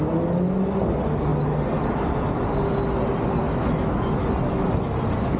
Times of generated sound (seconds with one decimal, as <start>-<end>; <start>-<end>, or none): none